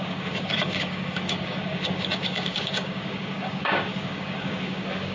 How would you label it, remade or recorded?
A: remade